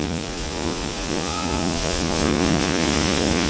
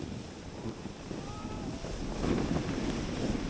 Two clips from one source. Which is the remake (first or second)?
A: first